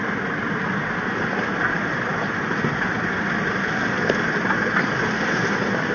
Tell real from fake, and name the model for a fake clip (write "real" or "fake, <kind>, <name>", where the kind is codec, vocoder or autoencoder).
real